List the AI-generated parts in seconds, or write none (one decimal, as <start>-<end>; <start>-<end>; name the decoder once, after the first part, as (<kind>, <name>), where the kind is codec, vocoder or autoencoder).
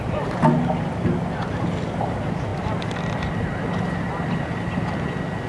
none